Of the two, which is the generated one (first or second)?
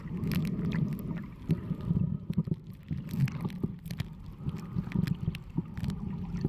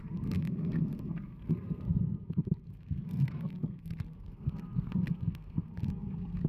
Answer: second